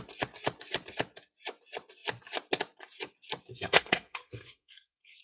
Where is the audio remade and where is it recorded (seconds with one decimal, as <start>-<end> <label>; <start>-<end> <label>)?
0.0-3.5 recorded; 3.5-5.2 remade